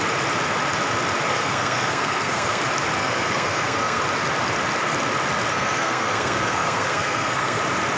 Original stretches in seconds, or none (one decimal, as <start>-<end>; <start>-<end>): 0.0-1.3; 2.6-3.0; 4.0-5.5; 7.6-8.0

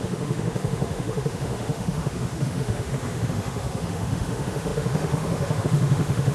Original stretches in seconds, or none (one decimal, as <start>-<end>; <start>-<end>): none

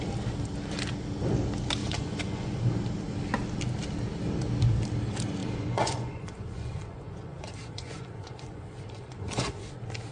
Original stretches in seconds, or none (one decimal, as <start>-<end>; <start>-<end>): 0.0-1.8; 2.6-5.4; 9.7-10.1

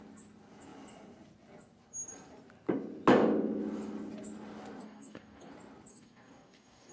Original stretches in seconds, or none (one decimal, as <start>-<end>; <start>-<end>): 0.0-4.8; 5.5-5.9

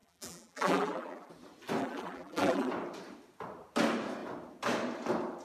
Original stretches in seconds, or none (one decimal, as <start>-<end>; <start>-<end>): 1.3-1.8; 2.7-5.4

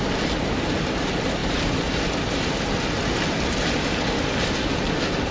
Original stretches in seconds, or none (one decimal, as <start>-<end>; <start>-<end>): 0.0-5.3